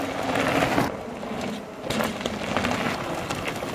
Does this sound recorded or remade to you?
recorded